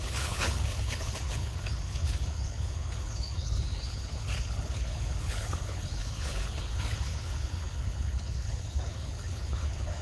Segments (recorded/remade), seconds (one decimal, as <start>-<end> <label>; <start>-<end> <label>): 0.0-10.0 remade